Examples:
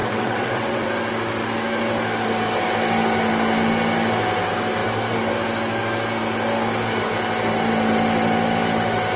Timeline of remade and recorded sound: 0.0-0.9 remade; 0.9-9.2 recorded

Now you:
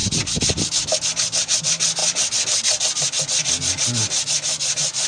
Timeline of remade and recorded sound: 0.0-5.1 recorded

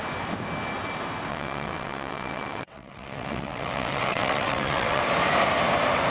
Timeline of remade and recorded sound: 0.0-1.3 recorded; 1.3-5.0 remade; 5.0-6.1 recorded

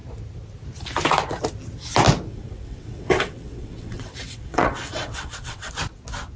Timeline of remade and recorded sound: 0.0-2.3 recorded; 2.3-5.7 remade; 5.7-6.4 recorded